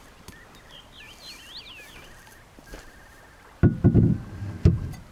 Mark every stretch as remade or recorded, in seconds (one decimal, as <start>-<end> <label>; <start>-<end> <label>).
0.0-5.1 recorded